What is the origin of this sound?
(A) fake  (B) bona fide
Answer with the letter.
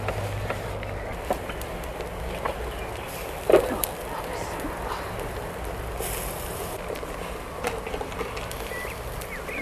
B